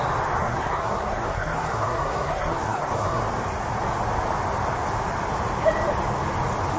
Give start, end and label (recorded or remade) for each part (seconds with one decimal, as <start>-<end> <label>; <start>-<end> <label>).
0.0-0.4 recorded; 0.4-3.2 remade; 3.2-6.8 recorded